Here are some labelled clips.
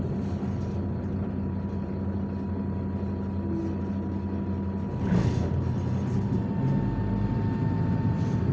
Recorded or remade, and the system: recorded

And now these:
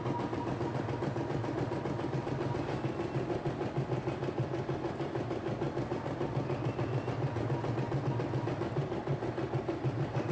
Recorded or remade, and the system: recorded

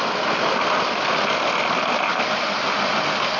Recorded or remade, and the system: recorded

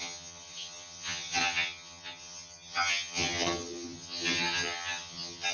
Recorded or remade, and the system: remade, vocoder, HiFi-GAN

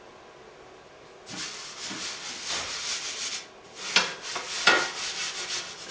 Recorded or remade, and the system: recorded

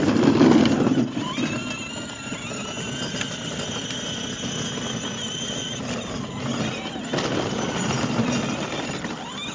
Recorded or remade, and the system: recorded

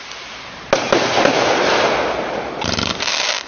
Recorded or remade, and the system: recorded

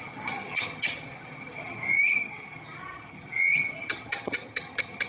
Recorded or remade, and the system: remade, vocoder, HiFi-GAN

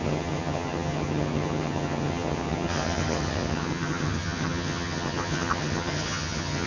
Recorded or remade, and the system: remade, vocoder, HiFi-GAN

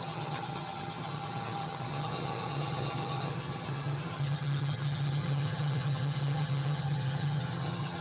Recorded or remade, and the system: remade, vocoder, HiFi-GAN